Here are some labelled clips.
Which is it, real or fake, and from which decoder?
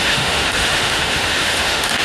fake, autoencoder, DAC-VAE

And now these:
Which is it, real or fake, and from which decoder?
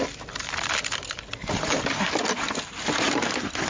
real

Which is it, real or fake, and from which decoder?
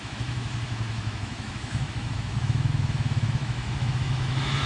fake, autoencoder, DAC-VAE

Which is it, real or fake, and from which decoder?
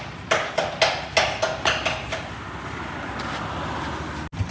real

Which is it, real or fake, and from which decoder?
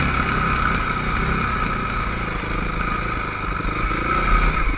real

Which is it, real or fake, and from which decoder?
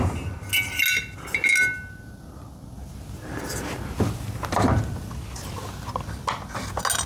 real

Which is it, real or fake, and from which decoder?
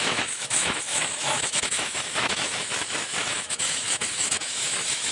fake, autoencoder, DAC-VAE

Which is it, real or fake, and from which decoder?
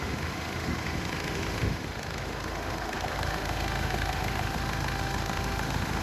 fake, autoencoder, DAC-VAE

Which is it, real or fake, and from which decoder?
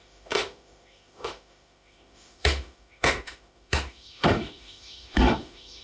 fake, autoencoder, DAC-VAE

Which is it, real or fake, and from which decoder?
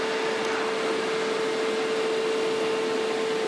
real